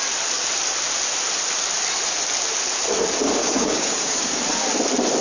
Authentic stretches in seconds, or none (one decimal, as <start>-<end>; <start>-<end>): 0.0-3.4; 4.4-5.2